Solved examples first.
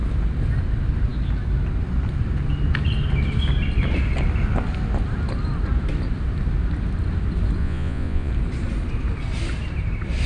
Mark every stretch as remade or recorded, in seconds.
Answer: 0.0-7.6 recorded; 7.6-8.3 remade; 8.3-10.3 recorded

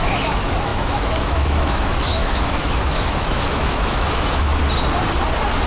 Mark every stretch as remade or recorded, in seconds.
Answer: 0.0-4.5 remade; 4.5-5.7 recorded

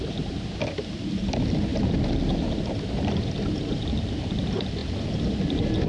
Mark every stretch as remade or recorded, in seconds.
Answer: 0.0-5.9 recorded

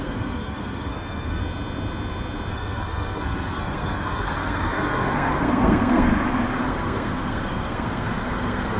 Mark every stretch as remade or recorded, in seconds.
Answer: 0.0-1.4 remade; 1.4-2.5 recorded; 2.5-6.1 remade; 6.1-6.6 recorded; 6.6-8.8 remade

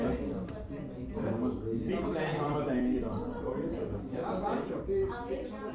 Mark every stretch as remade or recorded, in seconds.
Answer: 0.0-2.3 recorded; 2.3-4.8 remade; 4.8-5.7 recorded

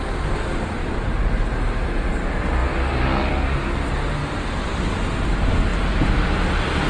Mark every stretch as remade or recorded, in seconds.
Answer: 0.0-6.9 recorded